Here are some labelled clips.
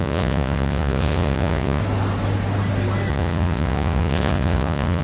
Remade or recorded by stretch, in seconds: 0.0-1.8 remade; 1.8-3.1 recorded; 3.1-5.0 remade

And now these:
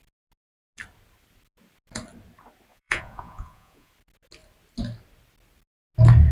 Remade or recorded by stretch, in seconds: 0.0-2.7 recorded; 2.7-3.9 remade; 3.9-6.3 recorded

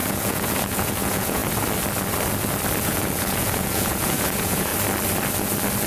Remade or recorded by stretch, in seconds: 0.0-1.4 remade; 1.4-2.8 recorded; 2.8-4.7 remade; 4.7-5.9 recorded

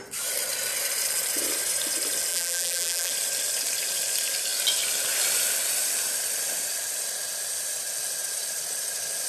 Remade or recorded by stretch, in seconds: 0.0-2.3 recorded; 2.3-3.1 remade; 3.1-9.3 recorded

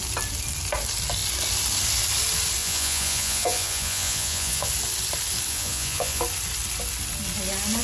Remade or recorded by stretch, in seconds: 0.0-2.6 recorded; 2.6-4.7 remade; 4.7-5.5 recorded; 5.5-6.2 remade; 6.2-7.8 recorded

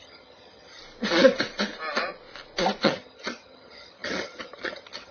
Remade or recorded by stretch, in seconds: 0.0-0.8 remade; 0.8-2.8 recorded; 2.8-5.1 remade

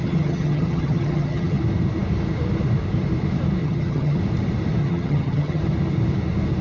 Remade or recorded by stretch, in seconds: 0.0-1.6 remade; 1.6-3.6 recorded; 3.6-4.2 remade; 4.2-4.8 recorded; 4.8-5.6 remade; 5.6-6.6 recorded